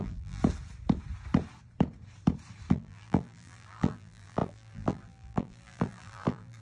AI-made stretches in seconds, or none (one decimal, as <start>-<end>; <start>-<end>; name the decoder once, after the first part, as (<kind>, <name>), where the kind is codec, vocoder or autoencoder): 0.0-0.4 (vocoder, BigVGAN v2); 2.7-6.6